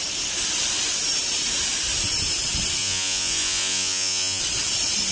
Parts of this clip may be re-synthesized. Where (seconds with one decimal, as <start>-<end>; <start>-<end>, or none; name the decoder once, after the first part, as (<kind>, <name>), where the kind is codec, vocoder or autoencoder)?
2.8-4.4 (vocoder, Vocos)